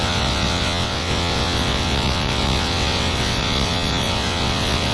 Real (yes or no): no